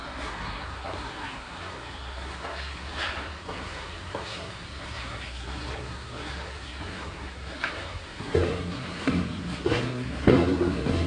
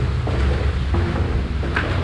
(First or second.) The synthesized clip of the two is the first